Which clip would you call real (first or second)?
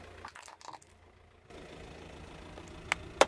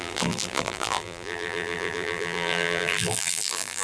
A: first